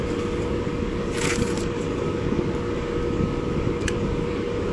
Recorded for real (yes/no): no